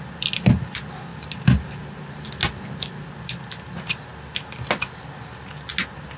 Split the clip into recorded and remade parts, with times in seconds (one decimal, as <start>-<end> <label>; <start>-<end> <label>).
0.0-1.1 recorded; 1.1-2.3 remade; 2.3-6.2 recorded